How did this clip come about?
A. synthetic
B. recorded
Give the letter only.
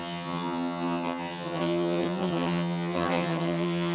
A